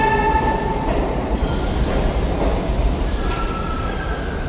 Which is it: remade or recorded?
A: recorded